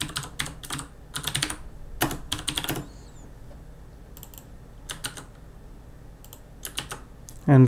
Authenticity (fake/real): real